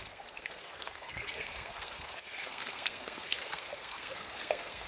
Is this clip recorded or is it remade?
remade